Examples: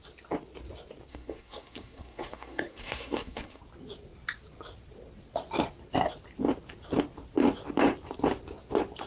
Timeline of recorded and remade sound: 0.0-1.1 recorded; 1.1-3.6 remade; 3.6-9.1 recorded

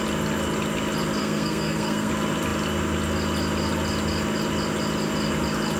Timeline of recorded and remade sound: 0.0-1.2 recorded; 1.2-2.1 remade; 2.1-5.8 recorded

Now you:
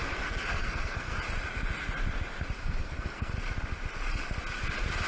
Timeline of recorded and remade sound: 0.0-1.2 remade; 1.2-2.6 recorded; 2.6-3.3 remade; 3.3-5.1 recorded

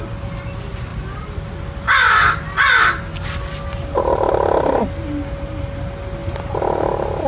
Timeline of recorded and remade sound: 0.0-7.3 recorded

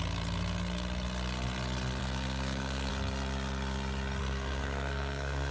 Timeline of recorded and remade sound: 0.0-2.0 recorded; 2.0-2.9 remade; 2.9-4.2 recorded; 4.2-5.5 remade